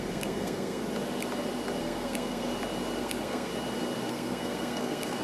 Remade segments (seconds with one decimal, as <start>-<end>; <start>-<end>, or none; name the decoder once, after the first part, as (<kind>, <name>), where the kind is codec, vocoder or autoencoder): 0.0-0.8 (codec, SNAC); 1.8-2.5; 3.0-3.5; 4.1-5.2